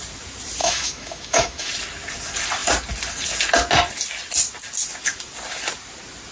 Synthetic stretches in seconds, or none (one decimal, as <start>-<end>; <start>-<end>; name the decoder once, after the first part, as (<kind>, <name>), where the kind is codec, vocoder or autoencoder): 0.6-1.7 (autoencoder, DAC-VAE)

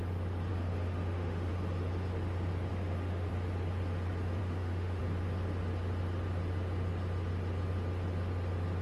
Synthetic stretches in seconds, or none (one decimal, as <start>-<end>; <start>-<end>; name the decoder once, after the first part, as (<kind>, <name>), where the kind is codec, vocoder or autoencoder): 0.5-1.5 (autoencoder, DAC-VAE); 2.7-3.3; 4.4-5.0